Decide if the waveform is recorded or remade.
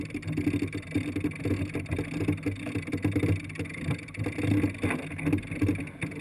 recorded